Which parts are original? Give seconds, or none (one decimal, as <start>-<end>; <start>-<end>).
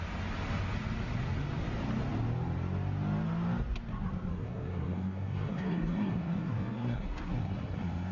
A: 0.0-4.3